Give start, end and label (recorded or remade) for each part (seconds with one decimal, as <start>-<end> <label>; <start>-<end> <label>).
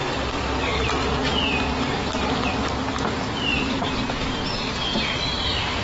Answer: 0.0-1.0 recorded; 1.0-2.6 remade; 2.6-4.9 recorded; 4.9-5.8 remade